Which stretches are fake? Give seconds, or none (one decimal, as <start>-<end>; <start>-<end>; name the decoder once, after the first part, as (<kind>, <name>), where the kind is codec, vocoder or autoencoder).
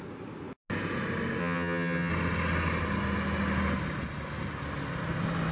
1.4-2.1 (vocoder, HiFi-GAN)